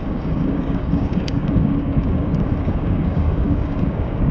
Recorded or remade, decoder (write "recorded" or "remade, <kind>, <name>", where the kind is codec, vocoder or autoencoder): remade, codec, DAC